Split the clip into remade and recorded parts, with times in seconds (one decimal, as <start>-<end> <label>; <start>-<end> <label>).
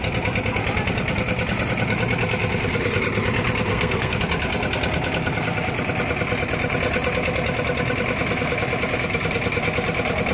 0.0-3.7 recorded; 3.7-4.2 remade; 4.2-10.3 recorded